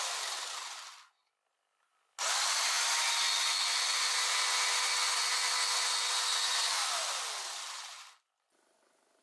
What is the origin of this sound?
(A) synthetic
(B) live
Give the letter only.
B